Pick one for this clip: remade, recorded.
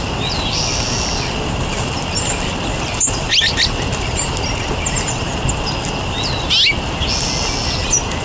recorded